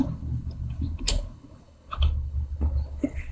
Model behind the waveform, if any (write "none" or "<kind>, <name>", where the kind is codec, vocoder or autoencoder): codec, HILCodec